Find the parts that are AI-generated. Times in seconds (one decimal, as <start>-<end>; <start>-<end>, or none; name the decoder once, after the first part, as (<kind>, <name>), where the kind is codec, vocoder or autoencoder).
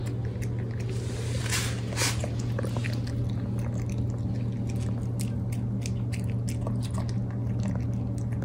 none